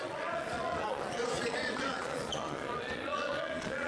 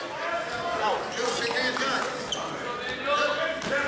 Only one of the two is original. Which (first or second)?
second